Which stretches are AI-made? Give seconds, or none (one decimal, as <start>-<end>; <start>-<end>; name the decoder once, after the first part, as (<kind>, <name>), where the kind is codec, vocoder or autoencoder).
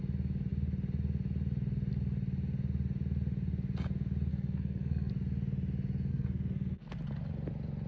4.3-5.1 (codec, SNAC); 6.1-6.9